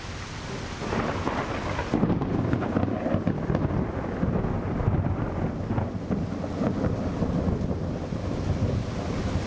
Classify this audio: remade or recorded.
recorded